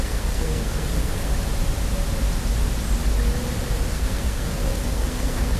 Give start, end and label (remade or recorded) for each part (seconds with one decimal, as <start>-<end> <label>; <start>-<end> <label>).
0.0-1.3 remade; 1.3-3.9 recorded; 3.9-5.6 remade